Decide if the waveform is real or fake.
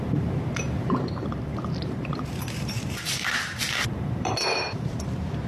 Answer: fake